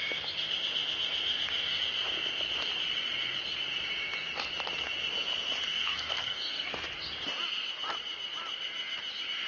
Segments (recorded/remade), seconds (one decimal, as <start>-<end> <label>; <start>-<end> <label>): 0.0-5.7 recorded; 5.7-6.7 remade; 6.7-9.5 recorded